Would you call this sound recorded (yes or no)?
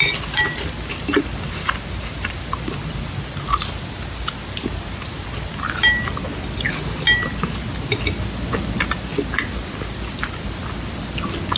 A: yes